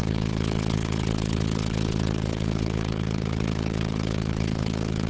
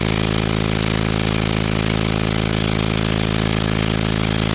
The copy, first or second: first